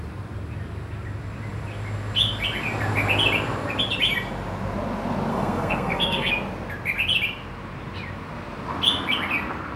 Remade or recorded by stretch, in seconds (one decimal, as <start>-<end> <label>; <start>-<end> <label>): 0.0-5.3 recorded; 5.3-6.3 remade; 6.3-9.8 recorded